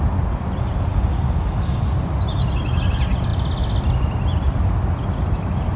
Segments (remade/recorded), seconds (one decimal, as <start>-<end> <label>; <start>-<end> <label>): 0.0-0.9 recorded; 0.9-1.8 remade; 1.8-5.8 recorded